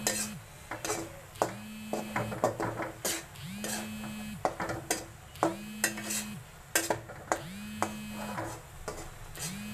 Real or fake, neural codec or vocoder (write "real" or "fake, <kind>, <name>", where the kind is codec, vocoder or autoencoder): real